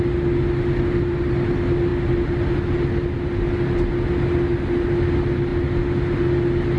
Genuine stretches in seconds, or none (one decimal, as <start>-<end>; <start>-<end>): 0.0-6.8